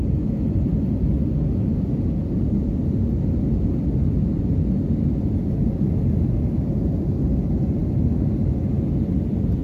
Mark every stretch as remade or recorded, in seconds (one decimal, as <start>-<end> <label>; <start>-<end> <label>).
0.0-9.6 recorded